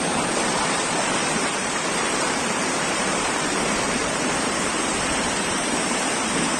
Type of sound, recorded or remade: remade